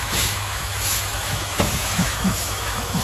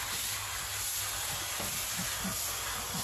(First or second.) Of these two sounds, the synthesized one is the first